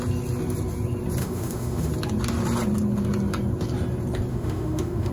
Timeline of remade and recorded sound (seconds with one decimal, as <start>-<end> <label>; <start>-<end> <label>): 0.0-1.2 recorded; 1.2-1.9 remade; 1.9-4.3 recorded; 4.3-5.1 remade